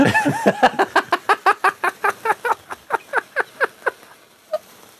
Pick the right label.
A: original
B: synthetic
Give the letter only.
A